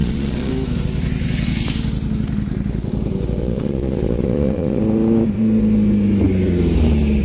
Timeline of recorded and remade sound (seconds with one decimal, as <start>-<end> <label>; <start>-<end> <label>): 0.0-0.5 remade; 0.5-3.4 recorded; 3.4-4.8 remade; 4.8-7.2 recorded